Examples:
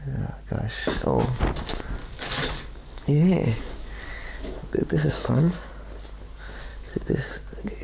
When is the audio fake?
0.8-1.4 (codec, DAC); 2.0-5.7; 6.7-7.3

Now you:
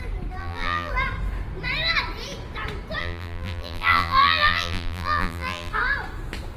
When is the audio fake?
0.4-0.9 (vocoder, BigVGAN v2); 3.0-5.7